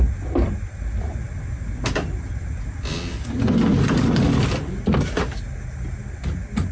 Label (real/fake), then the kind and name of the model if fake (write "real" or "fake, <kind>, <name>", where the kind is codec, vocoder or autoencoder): real